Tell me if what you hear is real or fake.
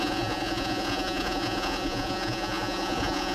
fake